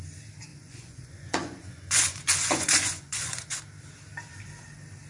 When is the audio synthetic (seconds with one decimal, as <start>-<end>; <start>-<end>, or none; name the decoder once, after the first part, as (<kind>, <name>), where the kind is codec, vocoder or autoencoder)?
0.5-3.6 (vocoder, Vocos)